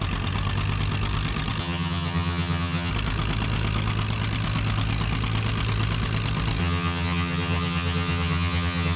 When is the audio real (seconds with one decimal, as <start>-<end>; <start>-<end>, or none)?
0.0-1.6; 2.9-6.6